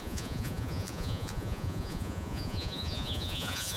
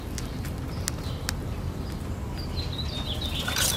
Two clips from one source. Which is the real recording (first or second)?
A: second